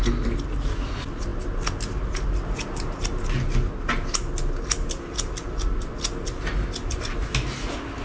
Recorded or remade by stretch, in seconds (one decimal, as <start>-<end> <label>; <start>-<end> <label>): 0.0-8.0 recorded